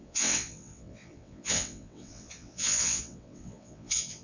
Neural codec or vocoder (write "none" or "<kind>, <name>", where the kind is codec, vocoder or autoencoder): vocoder, WaveNeXt